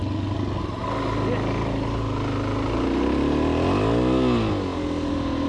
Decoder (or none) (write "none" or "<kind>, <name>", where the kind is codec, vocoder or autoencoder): none